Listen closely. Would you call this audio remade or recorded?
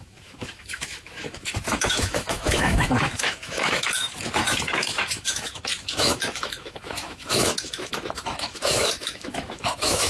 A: remade